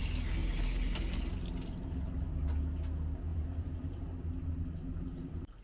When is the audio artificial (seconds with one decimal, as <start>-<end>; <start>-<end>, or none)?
0.4-1.5; 3.3-5.6